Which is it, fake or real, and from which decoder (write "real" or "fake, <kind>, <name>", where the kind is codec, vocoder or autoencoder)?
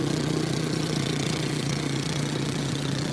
fake, vocoder, WaveNeXt